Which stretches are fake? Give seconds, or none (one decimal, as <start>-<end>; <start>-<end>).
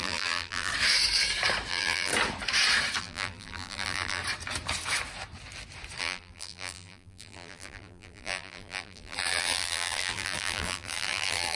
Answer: 0.0-0.7; 1.7-2.1; 3.0-4.2; 6.0-11.6